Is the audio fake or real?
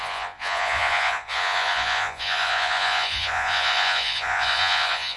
fake